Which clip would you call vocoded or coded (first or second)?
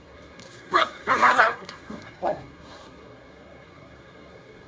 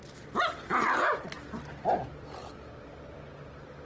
first